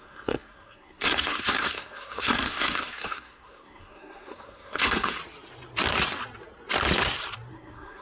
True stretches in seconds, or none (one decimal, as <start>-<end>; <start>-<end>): 5.2-7.5